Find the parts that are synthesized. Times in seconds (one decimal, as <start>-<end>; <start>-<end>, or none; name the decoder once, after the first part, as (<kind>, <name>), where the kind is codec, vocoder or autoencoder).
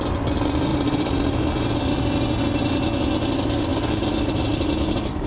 0.7-1.5 (vocoder, BigVGAN v2)